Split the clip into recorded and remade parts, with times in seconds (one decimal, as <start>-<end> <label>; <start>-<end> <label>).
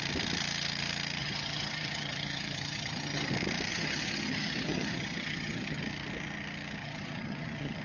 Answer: 0.0-1.2 recorded; 1.2-3.3 remade; 3.3-3.7 recorded; 3.7-5.8 remade; 5.8-6.8 recorded; 6.8-7.8 remade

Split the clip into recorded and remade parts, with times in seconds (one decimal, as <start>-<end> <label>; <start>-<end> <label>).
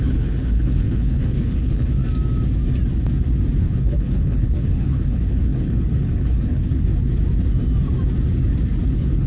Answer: 0.0-2.0 remade; 2.0-3.6 recorded; 3.6-6.9 remade; 6.9-8.9 recorded; 8.9-9.3 remade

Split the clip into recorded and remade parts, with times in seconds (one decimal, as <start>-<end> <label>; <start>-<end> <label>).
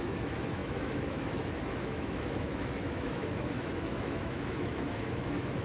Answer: 0.0-5.6 remade